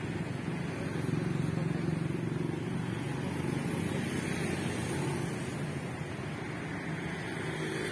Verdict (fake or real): real